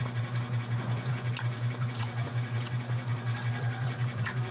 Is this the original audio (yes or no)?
no